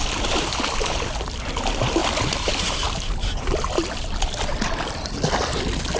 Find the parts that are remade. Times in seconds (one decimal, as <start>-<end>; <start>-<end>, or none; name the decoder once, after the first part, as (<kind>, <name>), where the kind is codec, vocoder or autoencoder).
none